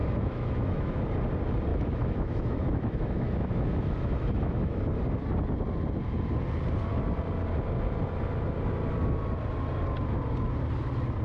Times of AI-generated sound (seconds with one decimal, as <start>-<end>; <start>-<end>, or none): 0.0-1.0; 1.7-4.8